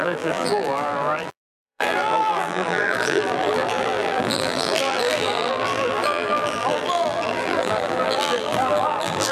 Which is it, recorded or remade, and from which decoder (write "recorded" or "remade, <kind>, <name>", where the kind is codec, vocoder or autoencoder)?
remade, vocoder, BigVGAN v2